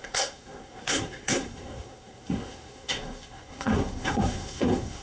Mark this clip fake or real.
fake